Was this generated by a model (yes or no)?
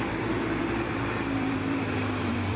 yes